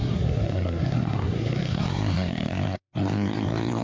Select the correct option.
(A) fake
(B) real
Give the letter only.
A